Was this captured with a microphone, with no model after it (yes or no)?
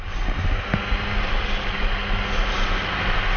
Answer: yes